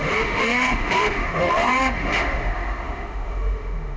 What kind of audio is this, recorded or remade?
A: remade